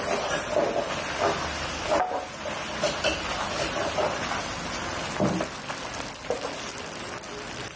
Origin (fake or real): real